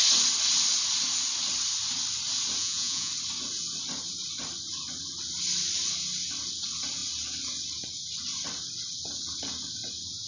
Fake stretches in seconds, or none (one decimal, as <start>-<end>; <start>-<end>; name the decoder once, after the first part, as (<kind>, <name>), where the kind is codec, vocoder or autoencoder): 2.6-3.1 (vocoder, Vocos)